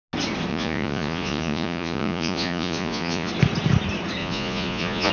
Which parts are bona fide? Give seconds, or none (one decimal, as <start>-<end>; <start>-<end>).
0.0-0.5; 3.3-4.2